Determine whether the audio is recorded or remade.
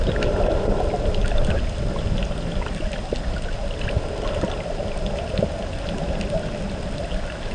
recorded